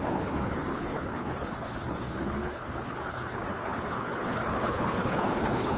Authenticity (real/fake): fake